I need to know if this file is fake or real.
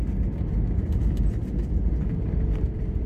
real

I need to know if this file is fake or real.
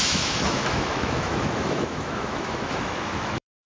fake